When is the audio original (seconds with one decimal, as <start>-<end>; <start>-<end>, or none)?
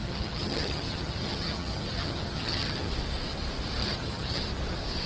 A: 2.9-3.8; 4.4-5.1